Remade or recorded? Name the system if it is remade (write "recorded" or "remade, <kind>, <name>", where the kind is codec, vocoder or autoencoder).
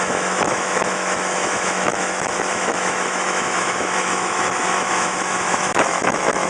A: remade, autoencoder, DAC-VAE